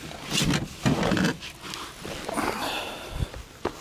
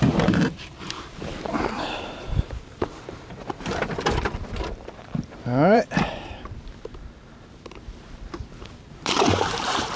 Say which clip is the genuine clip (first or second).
first